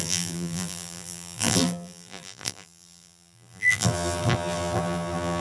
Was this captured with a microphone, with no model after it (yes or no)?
no